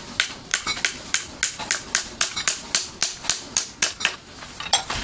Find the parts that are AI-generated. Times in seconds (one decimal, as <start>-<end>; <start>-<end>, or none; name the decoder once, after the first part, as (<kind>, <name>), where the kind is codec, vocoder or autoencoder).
none